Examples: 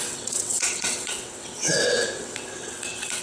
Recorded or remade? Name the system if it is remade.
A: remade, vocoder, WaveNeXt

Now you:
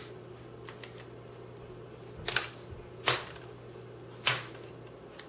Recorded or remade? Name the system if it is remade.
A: recorded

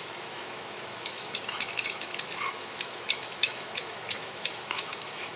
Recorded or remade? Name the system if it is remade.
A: remade, autoencoder, DAC-VAE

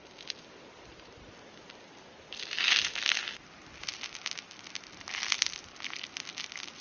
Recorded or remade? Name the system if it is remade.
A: recorded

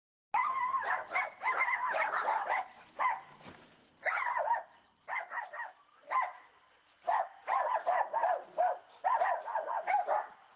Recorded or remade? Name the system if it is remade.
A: recorded